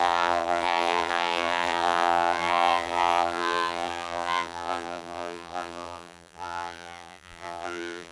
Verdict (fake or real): fake